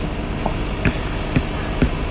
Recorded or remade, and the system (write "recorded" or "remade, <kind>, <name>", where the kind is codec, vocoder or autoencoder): recorded